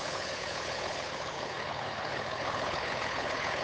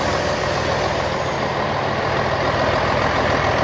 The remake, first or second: first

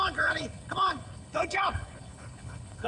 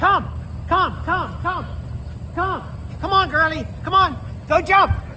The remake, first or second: first